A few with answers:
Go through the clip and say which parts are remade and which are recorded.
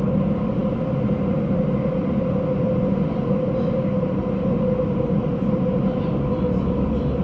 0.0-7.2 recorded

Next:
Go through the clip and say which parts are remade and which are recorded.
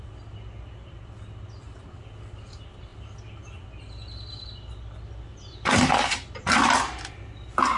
0.0-7.8 recorded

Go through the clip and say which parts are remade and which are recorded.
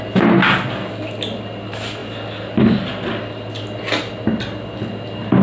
0.0-5.4 recorded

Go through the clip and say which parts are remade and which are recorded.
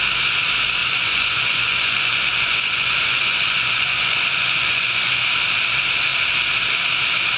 0.0-0.8 recorded; 0.8-5.2 remade; 5.2-7.4 recorded